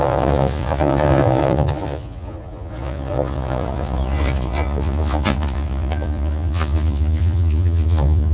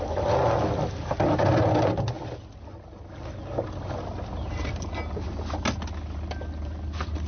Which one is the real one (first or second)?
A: second